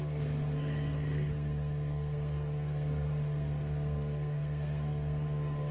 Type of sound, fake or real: fake